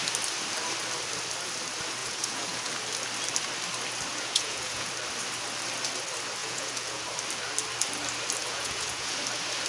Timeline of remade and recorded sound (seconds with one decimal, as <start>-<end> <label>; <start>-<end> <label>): 0.0-2.0 recorded; 2.0-2.7 remade; 2.7-4.1 recorded; 4.1-4.9 remade; 4.9-6.4 recorded; 6.4-7.0 remade; 7.0-8.4 recorded; 8.4-9.2 remade; 9.2-9.7 recorded